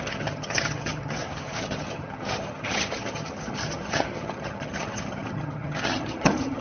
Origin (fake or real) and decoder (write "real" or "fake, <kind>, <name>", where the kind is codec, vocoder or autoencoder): fake, vocoder, HiFi-GAN